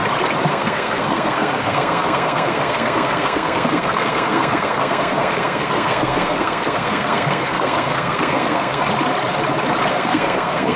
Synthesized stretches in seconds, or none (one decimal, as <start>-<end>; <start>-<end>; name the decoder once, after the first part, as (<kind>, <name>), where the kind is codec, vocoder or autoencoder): 0.5-8.8 (codec, SNAC); 9.9-10.8